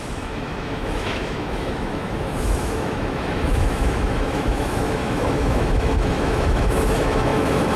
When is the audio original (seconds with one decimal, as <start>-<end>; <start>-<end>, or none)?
none